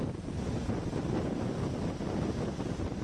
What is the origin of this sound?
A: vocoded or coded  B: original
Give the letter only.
B